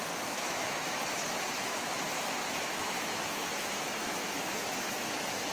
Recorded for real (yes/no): no